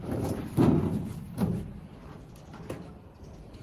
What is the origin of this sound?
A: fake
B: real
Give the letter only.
B